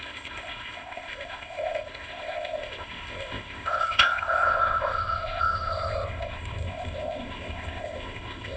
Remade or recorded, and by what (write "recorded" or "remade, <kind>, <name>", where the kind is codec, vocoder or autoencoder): remade, codec, ZipCodec